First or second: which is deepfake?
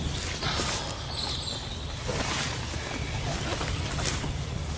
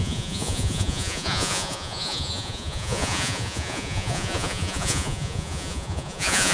second